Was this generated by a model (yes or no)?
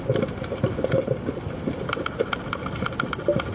no